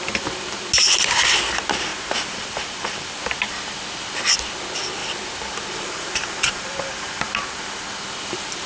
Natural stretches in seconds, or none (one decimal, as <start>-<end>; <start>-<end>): 0.0-1.9; 3.2-5.0; 7.2-8.7